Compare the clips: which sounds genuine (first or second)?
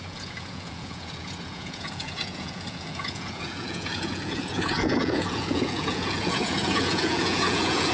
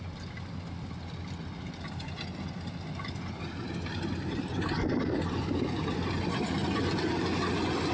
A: second